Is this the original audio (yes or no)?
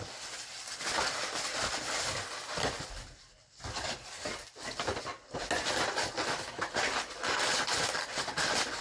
yes